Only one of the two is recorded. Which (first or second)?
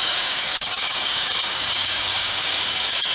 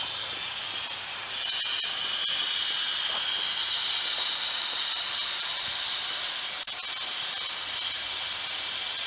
second